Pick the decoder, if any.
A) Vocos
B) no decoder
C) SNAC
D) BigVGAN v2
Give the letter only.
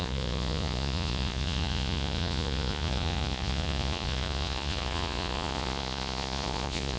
A